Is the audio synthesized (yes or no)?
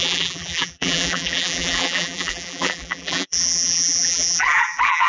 yes